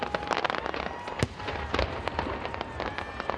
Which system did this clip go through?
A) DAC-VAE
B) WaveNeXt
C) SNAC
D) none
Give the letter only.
D